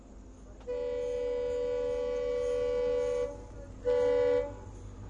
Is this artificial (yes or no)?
no